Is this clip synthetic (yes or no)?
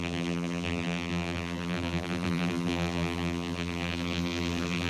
yes